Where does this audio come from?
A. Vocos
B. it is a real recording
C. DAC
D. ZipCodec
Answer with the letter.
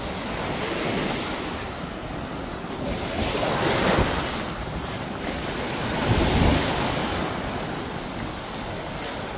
B